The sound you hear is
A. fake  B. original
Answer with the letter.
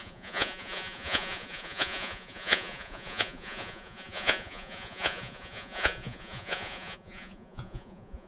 A